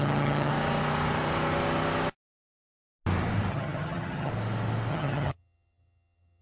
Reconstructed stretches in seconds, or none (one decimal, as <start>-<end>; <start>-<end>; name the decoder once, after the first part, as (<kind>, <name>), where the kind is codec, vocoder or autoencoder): 0.0-0.5 (vocoder, HiFi-GAN); 3.5-4.3; 4.9-6.4